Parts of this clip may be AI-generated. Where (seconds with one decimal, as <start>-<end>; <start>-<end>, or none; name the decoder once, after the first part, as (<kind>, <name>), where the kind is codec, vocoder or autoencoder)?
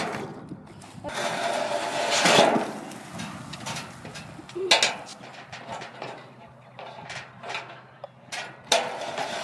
none